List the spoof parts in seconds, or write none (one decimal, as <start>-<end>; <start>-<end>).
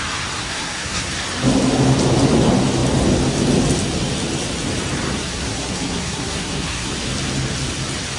0.4-1.1; 5.2-6.9